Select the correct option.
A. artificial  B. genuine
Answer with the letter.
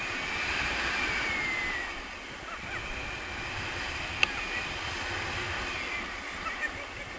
B